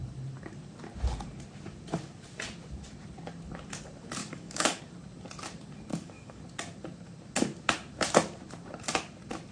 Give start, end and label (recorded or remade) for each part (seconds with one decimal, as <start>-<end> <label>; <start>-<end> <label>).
0.0-4.2 recorded; 4.2-4.8 remade; 4.8-5.9 recorded; 5.9-6.4 remade; 6.4-9.5 recorded